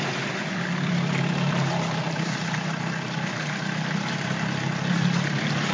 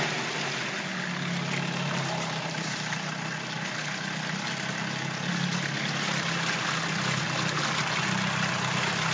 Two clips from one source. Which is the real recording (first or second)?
second